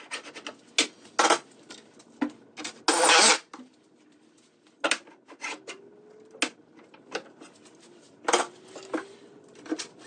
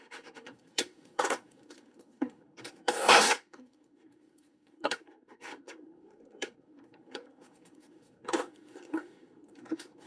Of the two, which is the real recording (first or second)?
first